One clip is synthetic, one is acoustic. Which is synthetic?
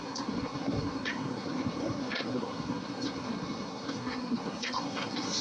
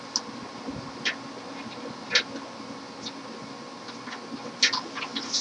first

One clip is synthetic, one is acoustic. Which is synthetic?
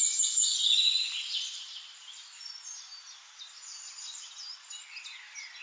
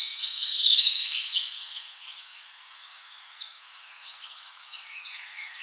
second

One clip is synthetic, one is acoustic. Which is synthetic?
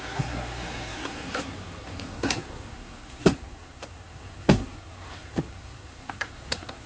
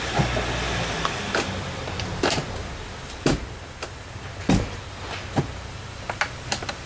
first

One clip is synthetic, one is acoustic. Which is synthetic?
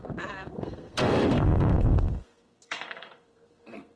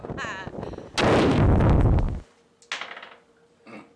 first